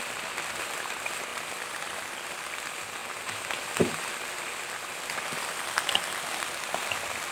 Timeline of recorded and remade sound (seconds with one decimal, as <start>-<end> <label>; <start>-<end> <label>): 0.0-7.3 recorded